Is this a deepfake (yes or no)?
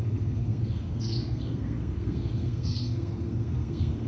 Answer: yes